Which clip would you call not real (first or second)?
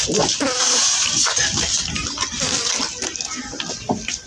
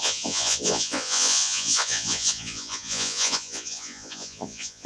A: second